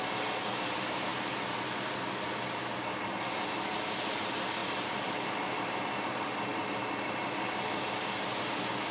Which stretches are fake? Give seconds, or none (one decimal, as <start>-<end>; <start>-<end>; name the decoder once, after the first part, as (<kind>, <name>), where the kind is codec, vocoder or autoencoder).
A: 4.6-5.9 (vocoder, BigVGAN v2); 6.5-8.4